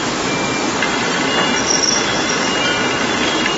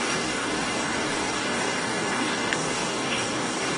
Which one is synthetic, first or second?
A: second